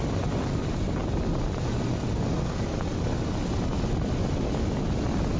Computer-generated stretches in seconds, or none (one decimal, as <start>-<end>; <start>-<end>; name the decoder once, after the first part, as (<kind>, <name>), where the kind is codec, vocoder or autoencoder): none